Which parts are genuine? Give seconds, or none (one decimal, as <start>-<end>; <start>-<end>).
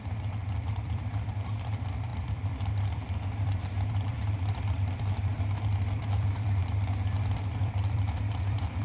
none